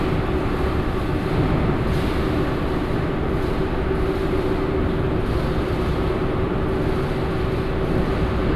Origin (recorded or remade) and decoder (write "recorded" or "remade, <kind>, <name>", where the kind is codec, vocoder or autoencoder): recorded